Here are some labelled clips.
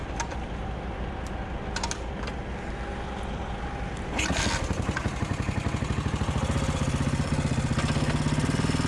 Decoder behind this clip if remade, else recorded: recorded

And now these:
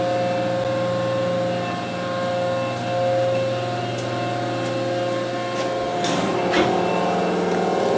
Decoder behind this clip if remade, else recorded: recorded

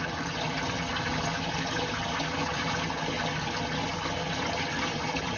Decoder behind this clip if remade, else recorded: recorded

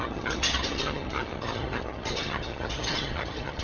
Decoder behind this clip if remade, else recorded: remade, vocoder, HiFi-GAN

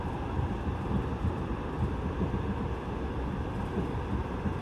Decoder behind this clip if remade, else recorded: recorded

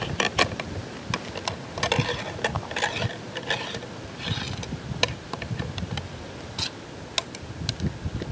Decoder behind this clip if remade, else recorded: recorded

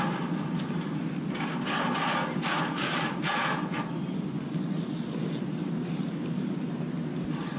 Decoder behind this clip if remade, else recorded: recorded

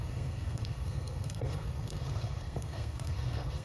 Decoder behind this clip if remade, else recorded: remade, codec, SNAC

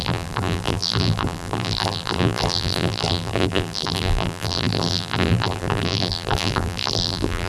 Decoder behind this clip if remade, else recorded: remade, vocoder, BigVGAN v2